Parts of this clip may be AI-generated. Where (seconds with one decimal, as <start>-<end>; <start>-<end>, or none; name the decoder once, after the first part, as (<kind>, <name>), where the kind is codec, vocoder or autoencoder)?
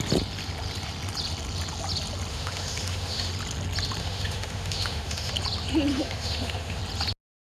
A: 2.3-3.3 (autoencoder, DAC-VAE); 4.0-5.3; 5.9-6.8